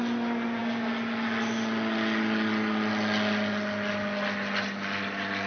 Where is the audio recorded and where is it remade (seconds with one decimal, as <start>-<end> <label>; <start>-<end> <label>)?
0.0-5.5 recorded